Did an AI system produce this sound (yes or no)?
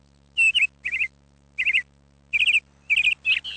no